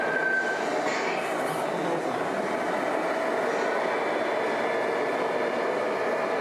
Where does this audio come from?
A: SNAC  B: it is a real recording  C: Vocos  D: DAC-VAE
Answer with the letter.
B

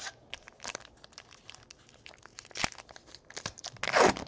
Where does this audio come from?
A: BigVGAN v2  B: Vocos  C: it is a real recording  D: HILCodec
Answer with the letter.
C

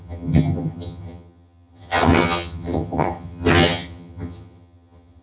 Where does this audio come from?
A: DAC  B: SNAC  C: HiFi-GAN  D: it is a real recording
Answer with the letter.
C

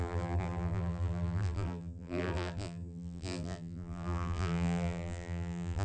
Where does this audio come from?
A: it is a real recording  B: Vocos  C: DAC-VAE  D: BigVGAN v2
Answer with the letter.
D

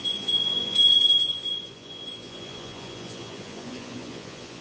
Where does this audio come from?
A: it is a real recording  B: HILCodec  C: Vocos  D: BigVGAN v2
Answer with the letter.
C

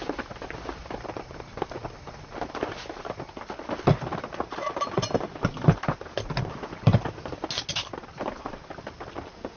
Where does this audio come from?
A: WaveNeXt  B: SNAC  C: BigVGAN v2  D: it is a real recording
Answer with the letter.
D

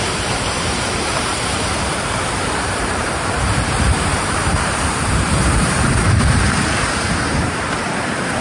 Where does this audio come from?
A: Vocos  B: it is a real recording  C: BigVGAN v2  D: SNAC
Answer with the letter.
C